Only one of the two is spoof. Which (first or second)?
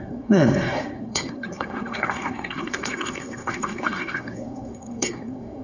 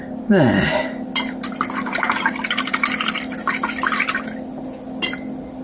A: first